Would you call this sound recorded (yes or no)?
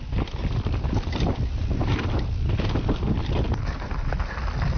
yes